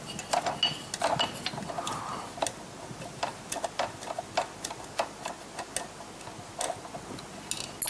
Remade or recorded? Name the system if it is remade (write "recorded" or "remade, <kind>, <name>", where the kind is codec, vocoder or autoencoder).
recorded